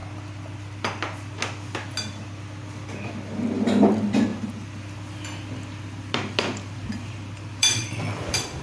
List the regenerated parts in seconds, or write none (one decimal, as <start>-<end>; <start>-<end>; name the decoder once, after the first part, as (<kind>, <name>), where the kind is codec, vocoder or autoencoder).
4.3-8.6 (vocoder, BigVGAN v2)